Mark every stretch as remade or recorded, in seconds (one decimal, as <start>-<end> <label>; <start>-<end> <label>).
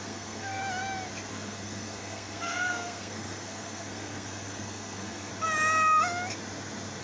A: 0.0-0.6 remade; 0.6-1.3 recorded; 1.3-5.3 remade; 5.3-7.0 recorded